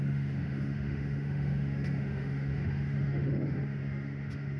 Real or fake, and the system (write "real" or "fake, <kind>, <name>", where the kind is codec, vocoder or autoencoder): fake, autoencoder, DAC-VAE